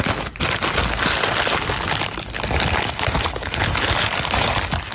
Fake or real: real